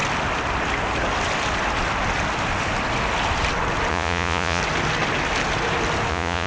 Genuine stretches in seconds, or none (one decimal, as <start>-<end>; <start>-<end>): 0.0-3.9; 4.6-6.1